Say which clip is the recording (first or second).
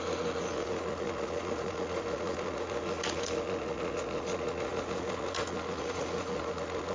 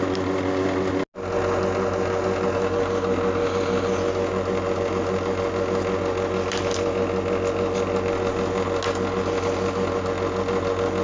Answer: second